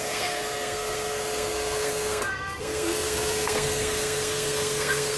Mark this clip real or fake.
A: fake